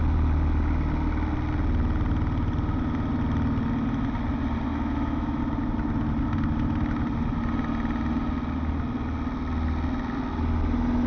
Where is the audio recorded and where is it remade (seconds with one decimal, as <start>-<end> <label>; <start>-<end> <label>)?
0.0-4.7 recorded; 4.7-5.4 remade; 5.4-11.1 recorded